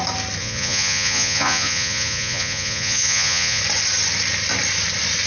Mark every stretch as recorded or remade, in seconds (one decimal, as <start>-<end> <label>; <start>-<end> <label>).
0.0-0.4 recorded; 0.4-3.6 remade; 3.6-5.3 recorded